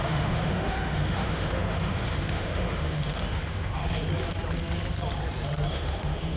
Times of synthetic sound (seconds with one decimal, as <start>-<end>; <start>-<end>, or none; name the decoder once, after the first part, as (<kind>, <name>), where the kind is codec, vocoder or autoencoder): 0.0-3.8 (autoencoder, DAC-VAE); 5.7-6.4